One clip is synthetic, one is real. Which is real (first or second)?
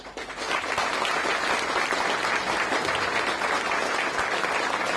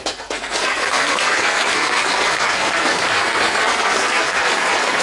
first